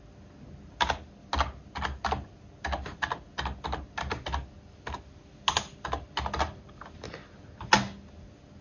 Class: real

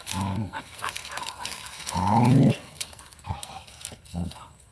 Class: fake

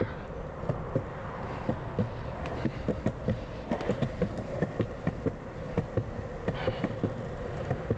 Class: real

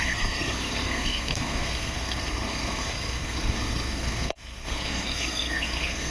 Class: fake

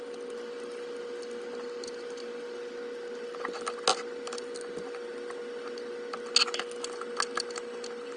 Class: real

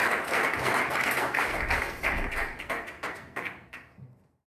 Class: fake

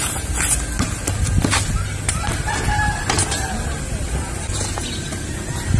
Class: real